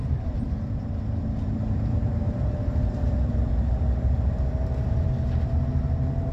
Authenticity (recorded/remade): remade